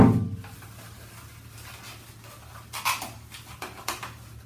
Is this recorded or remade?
recorded